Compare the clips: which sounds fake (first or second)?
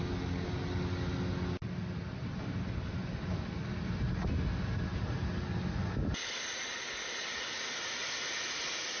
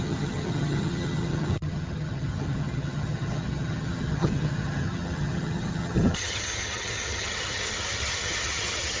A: second